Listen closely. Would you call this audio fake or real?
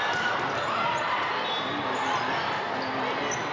real